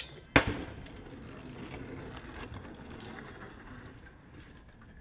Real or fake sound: real